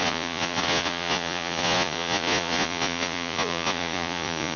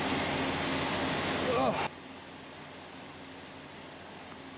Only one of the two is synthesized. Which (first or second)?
first